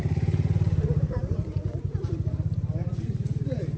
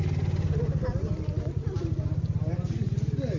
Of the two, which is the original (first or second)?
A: second